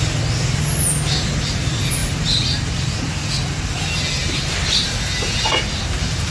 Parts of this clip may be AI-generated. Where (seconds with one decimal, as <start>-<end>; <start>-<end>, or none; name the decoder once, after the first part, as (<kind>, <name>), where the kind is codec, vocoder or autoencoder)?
4.2-6.3 (vocoder, BigVGAN v2)